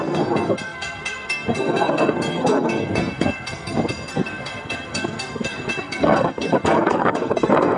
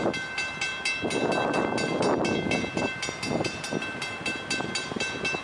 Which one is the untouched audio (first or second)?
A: second